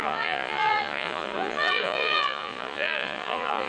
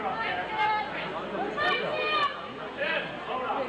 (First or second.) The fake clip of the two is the first